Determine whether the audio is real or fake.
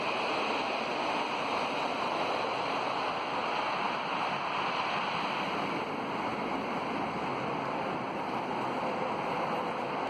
real